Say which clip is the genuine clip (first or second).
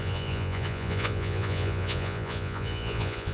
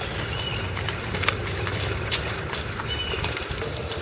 second